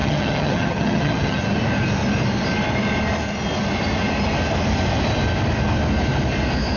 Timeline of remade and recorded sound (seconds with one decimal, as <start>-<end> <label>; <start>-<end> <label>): 0.0-1.4 remade; 1.4-6.8 recorded